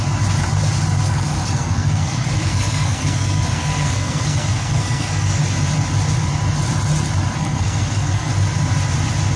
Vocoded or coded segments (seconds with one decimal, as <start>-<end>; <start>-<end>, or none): 1.0-5.4; 7.4-8.3